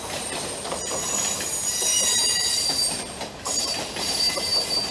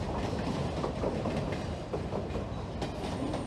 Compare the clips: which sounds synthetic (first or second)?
first